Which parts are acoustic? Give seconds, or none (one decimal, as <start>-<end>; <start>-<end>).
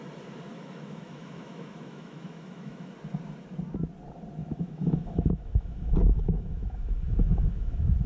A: 0.0-0.5; 2.9-4.4